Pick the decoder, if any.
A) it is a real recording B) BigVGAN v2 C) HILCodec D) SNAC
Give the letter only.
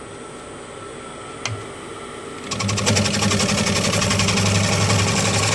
A